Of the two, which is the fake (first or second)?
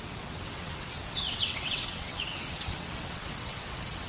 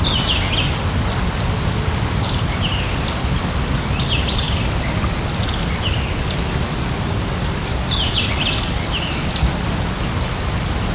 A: first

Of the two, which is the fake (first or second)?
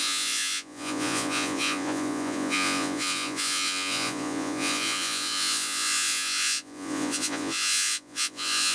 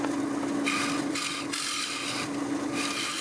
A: first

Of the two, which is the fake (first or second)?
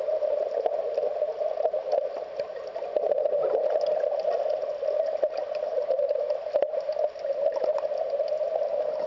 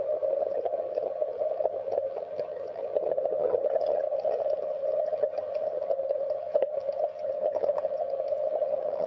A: second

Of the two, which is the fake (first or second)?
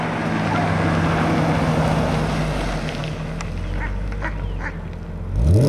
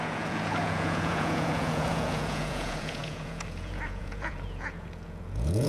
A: second